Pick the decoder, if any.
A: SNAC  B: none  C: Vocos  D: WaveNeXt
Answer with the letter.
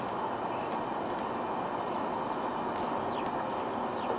B